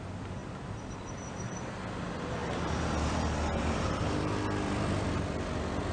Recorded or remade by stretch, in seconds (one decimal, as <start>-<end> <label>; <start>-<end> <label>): 0.0-0.4 recorded; 0.4-1.6 remade; 1.6-2.4 recorded; 2.4-5.1 remade; 5.1-5.9 recorded